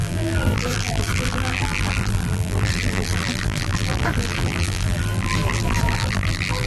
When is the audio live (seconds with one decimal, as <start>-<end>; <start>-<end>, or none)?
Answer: none